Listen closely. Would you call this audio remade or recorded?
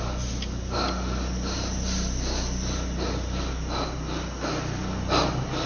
recorded